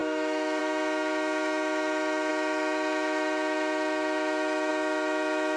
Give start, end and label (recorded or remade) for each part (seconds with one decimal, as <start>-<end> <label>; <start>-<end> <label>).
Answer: 0.0-5.6 remade